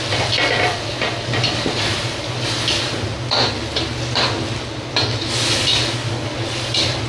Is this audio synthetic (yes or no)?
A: no